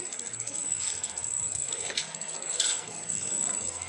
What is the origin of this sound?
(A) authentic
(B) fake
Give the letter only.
B